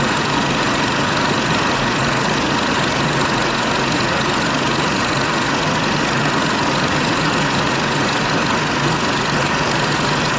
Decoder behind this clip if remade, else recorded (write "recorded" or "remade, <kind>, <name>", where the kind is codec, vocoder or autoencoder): remade, vocoder, Vocos